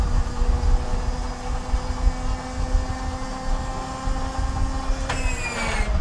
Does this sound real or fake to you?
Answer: real